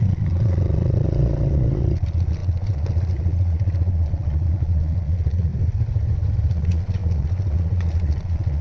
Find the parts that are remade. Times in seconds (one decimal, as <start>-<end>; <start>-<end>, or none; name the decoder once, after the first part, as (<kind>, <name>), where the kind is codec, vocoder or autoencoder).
0.0-5.5 (vocoder, Vocos); 6.5-8.6